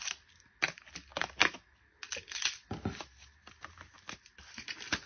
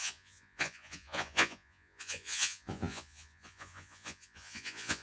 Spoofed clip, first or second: second